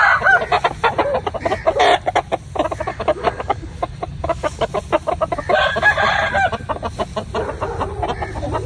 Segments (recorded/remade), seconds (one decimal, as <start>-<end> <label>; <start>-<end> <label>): 0.0-2.9 recorded; 2.9-4.7 remade; 4.7-8.7 recorded